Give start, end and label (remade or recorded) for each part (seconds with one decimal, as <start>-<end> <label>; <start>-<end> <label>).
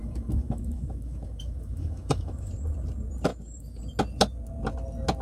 0.0-2.5 remade; 2.5-3.3 recorded; 3.3-3.8 remade; 3.8-5.2 recorded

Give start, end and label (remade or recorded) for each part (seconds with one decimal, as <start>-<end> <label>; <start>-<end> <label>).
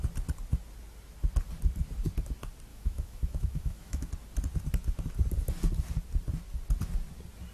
0.0-2.7 recorded; 2.7-4.1 remade; 4.1-7.5 recorded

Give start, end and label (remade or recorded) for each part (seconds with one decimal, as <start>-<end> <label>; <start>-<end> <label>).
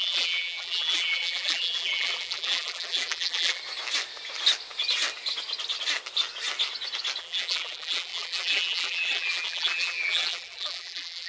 0.0-3.6 remade; 3.6-7.2 recorded; 7.2-11.3 remade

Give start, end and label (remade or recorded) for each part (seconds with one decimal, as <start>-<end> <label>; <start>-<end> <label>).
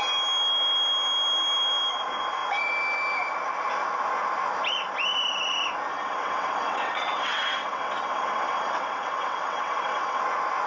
0.0-5.9 recorded; 5.9-10.2 remade; 10.2-10.7 recorded